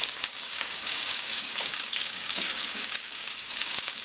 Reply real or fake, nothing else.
fake